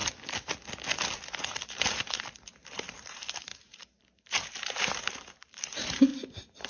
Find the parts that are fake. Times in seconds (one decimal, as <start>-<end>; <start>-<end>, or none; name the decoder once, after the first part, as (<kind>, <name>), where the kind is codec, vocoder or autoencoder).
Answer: 1.4-6.7 (vocoder, BigVGAN v2)